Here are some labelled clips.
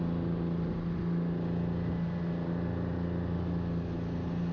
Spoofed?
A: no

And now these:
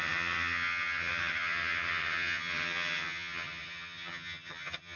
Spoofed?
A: yes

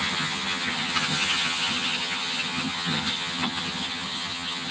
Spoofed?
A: yes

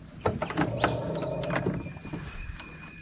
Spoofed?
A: no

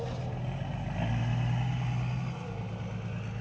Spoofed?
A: no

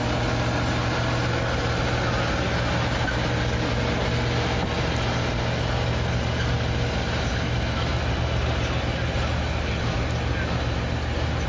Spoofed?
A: no